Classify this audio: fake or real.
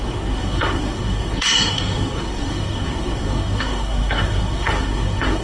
fake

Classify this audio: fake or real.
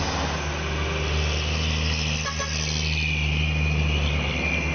real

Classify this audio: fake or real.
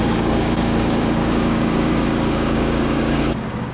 fake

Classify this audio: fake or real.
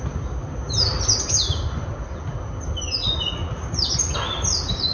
real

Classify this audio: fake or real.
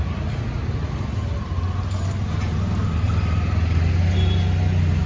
real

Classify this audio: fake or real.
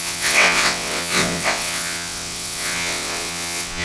fake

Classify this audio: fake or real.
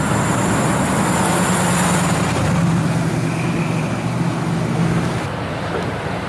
real